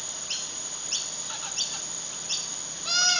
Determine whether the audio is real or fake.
real